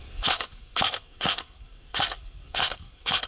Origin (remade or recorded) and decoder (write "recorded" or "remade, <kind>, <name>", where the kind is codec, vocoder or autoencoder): remade, codec, SNAC